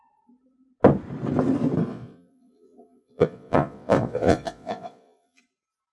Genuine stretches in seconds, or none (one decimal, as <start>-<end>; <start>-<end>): 0.0-1.9; 5.4-5.9